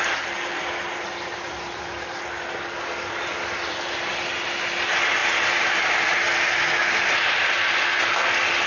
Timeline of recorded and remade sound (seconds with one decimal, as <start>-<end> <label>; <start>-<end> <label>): 0.0-8.7 recorded